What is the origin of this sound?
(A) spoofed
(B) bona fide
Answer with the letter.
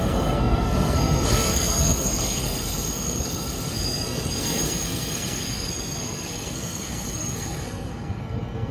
A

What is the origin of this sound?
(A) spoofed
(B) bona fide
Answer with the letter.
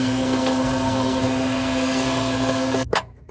A